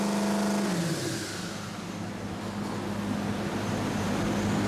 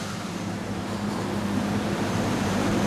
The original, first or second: first